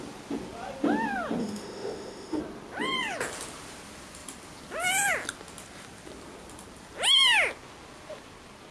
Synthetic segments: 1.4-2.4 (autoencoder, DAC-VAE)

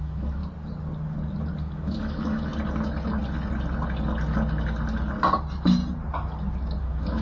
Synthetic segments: 0.0-0.4 (autoencoder, DAC-VAE); 1.6-2.5; 6.8-7.2

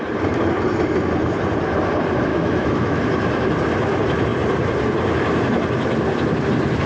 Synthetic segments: 2.3-3.0 (autoencoder, DAC-VAE)

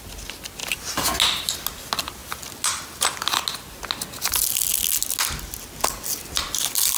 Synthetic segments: none